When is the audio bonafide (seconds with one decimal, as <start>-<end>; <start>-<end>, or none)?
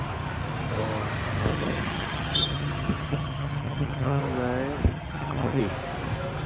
0.0-1.5; 4.2-4.9; 5.6-6.5